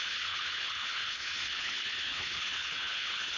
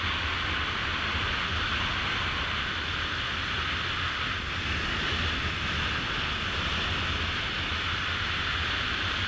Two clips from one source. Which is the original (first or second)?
second